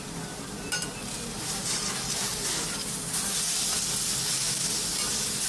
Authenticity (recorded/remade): recorded